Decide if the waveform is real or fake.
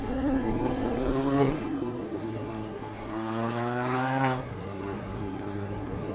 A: fake